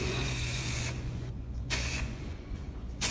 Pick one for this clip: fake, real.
fake